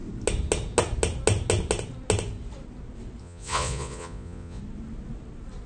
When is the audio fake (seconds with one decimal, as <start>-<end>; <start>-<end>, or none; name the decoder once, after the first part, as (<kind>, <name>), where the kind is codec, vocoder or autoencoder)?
3.2-4.6 (vocoder, Vocos)